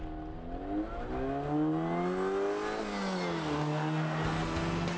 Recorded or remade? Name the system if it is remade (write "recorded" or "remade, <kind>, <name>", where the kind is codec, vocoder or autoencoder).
recorded